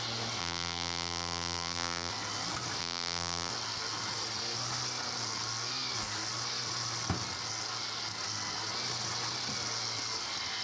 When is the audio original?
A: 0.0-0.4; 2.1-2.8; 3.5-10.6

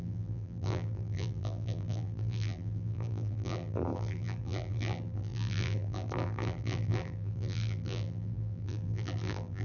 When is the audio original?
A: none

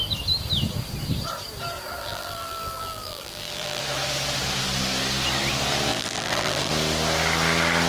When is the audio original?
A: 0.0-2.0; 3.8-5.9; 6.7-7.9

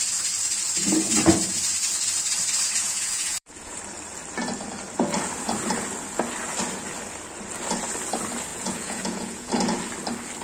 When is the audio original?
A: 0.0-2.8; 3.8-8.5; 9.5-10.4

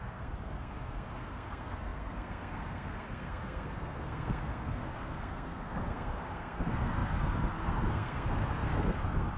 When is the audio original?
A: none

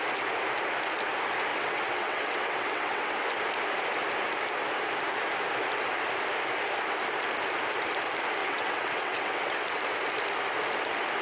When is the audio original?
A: 0.0-1.5; 3.1-8.4; 9.8-11.2

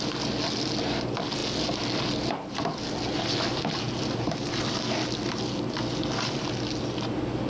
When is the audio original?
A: 0.0-7.5

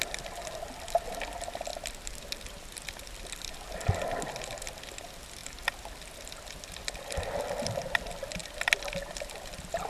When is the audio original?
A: 0.0-1.7; 3.7-9.9